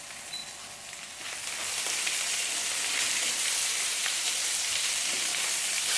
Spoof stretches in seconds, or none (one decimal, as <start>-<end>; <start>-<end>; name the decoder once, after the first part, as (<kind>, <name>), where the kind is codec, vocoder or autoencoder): 0.0-0.4 (vocoder, BigVGAN v2); 3.5-6.0